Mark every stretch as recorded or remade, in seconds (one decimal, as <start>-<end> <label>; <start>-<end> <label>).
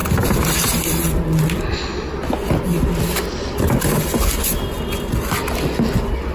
0.0-6.3 recorded